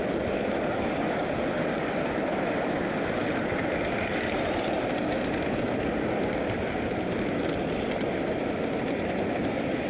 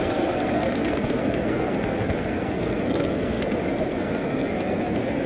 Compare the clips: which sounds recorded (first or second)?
first